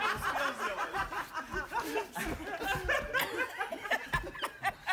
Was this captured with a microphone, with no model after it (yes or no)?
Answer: yes